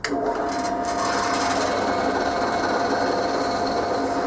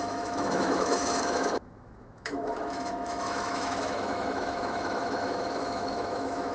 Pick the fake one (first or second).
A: second